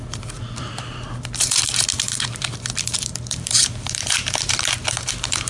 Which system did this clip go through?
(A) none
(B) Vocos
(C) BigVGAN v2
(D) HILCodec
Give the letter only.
C